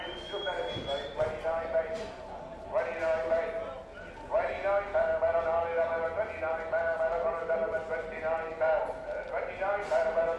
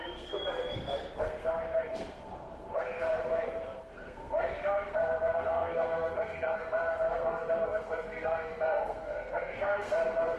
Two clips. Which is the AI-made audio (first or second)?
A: second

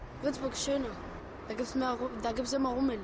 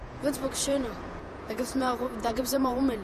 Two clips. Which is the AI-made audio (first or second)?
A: second